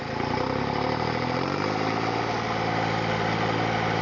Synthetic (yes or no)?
no